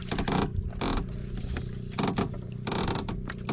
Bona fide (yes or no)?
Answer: yes